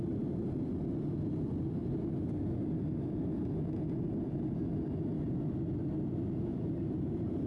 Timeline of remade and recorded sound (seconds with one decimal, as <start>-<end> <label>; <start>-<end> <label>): 0.0-6.5 recorded; 6.5-7.5 remade